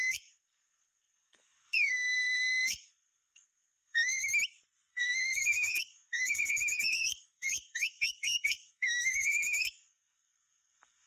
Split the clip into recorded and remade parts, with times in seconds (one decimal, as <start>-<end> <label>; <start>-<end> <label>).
0.0-4.3 remade; 4.3-4.9 recorded; 4.9-11.1 remade